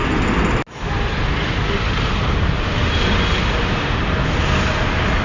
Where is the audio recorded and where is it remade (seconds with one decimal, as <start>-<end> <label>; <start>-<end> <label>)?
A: 0.0-5.2 recorded